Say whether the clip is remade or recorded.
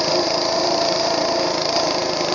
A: recorded